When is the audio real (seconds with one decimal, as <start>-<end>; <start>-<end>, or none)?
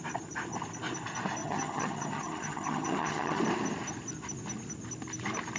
0.0-1.4; 3.4-5.6